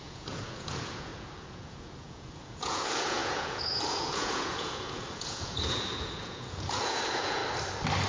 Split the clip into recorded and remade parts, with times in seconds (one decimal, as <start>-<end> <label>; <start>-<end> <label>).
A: 0.0-7.4 remade; 7.4-8.1 recorded